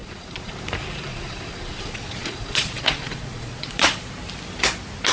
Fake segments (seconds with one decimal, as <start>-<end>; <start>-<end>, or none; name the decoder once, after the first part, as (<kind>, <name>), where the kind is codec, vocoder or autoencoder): 0.0-0.5 (vocoder, Vocos); 1.1-4.1